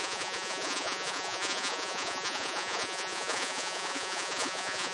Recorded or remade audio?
remade